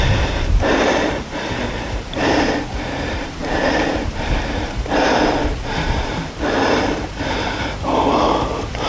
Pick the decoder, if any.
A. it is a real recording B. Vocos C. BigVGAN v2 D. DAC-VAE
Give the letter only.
C